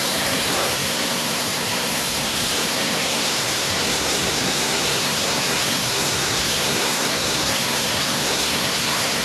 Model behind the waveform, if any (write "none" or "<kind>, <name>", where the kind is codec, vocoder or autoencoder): codec, SNAC